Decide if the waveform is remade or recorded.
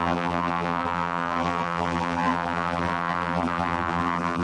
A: remade